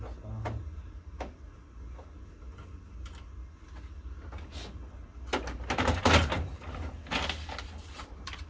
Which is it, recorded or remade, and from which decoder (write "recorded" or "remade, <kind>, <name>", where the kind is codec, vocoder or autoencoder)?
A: recorded